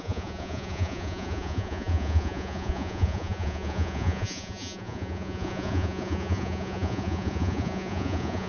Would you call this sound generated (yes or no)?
yes